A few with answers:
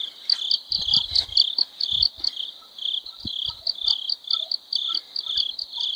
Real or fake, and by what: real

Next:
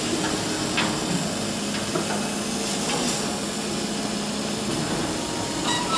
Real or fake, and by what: real